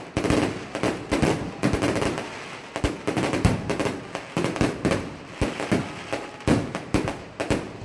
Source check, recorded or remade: recorded